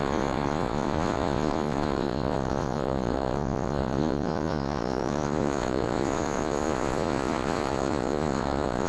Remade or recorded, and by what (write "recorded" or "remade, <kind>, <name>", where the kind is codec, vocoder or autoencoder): remade, vocoder, Vocos